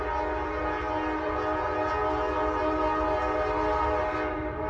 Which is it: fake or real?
real